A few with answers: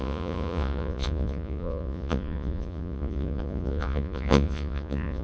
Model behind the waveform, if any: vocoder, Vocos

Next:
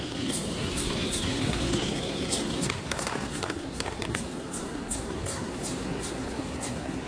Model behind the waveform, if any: codec, SNAC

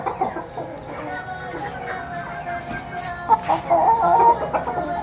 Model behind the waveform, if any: none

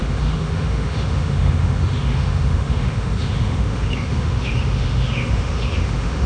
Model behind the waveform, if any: autoencoder, DAC-VAE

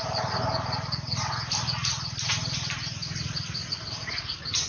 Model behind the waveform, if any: none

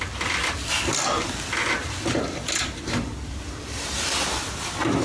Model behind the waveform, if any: none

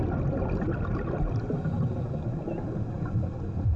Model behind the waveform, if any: none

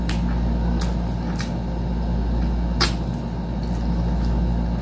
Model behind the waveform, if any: none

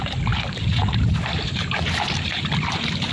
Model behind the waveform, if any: vocoder, BigVGAN v2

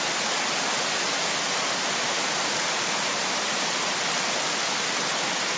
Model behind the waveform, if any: none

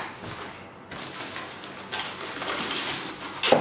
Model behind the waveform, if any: none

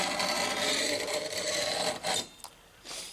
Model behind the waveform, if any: none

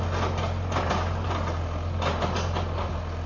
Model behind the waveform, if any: none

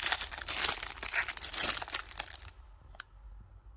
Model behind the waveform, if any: none